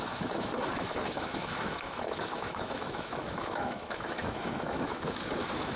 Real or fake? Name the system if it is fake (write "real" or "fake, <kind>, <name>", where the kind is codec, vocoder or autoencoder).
fake, autoencoder, DAC-VAE